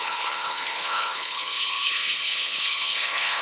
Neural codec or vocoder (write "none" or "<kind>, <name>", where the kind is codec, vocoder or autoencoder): codec, HILCodec